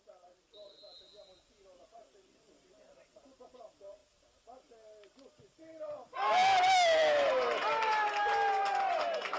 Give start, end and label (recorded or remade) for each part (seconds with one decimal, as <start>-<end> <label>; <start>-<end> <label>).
0.0-9.4 recorded